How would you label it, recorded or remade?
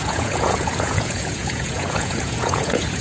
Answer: remade